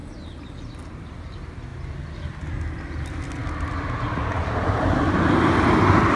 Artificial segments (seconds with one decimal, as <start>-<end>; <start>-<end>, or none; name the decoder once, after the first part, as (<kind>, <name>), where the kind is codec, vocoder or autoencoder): none